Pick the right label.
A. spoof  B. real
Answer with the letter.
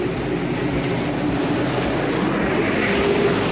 B